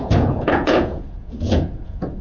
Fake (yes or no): yes